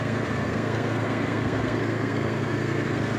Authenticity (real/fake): fake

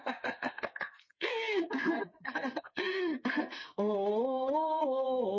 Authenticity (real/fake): fake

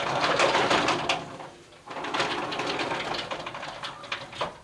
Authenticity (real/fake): real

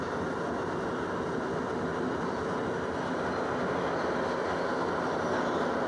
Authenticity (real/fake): real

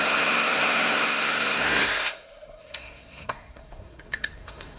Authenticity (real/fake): fake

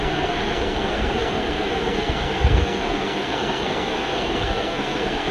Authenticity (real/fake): fake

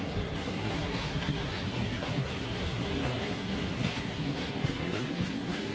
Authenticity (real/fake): fake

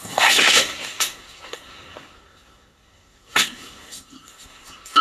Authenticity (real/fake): fake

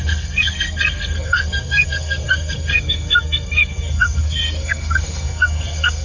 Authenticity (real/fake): fake